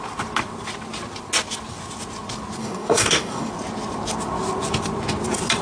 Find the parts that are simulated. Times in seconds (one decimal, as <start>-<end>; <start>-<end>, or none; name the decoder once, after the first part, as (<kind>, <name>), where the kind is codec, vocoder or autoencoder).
2.6-3.5 (codec, DAC)